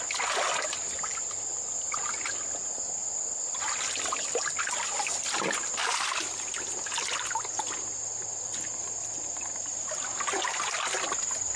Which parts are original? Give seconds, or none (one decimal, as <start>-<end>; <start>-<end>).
0.0-11.6